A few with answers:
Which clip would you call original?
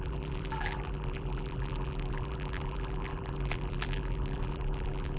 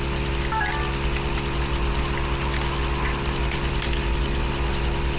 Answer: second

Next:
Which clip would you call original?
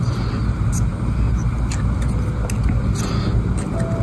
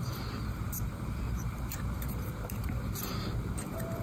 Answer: first